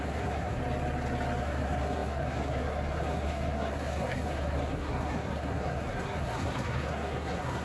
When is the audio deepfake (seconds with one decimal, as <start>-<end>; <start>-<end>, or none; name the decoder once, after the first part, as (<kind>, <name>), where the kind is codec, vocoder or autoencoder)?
0.0-0.6 (codec, SNAC); 1.4-7.6